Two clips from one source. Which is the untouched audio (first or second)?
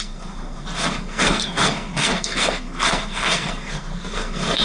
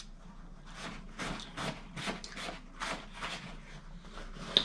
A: second